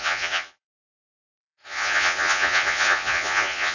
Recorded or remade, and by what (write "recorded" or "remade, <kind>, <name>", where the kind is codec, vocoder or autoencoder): remade, vocoder, Vocos